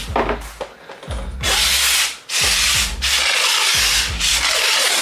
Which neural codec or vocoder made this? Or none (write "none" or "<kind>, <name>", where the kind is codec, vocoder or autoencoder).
none